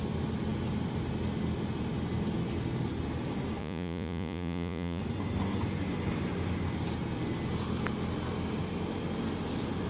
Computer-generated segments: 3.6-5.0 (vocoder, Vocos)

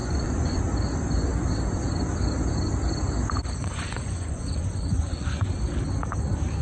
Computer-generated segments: 0.0-0.6 (vocoder, Vocos); 3.6-5.5

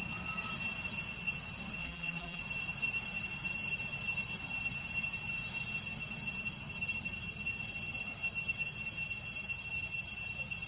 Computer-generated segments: 1.8-2.4 (vocoder, BigVGAN v2)

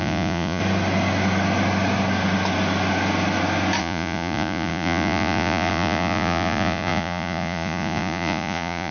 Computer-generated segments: 0.0-0.6 (vocoder, Vocos); 3.8-8.9

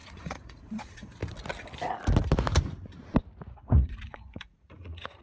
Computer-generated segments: 0.0-1.2 (vocoder, Vocos); 3.5-5.2

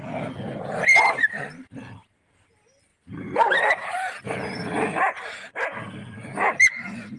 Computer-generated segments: none